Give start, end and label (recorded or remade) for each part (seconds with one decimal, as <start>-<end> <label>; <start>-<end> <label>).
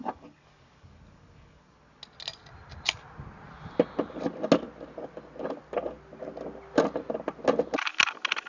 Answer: 0.0-2.0 remade; 2.0-8.5 recorded